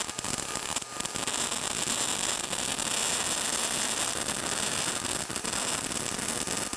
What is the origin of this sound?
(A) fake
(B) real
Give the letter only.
B